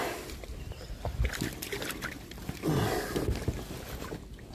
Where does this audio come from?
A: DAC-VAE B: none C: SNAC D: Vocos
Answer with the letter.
B